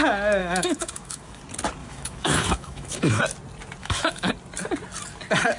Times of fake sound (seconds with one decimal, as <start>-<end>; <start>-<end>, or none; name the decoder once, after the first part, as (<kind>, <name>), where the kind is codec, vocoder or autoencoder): 0.4-1.4 (autoencoder, DAC-VAE); 1.8-3.2; 3.8-4.3